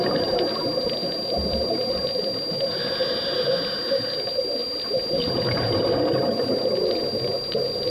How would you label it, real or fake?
real